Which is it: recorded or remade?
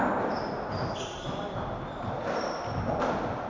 recorded